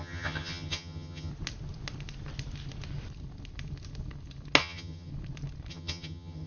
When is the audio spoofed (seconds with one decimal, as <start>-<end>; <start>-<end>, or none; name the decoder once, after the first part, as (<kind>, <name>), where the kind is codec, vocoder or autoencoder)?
0.0-1.3 (vocoder, HiFi-GAN); 4.6-5.1; 5.7-6.5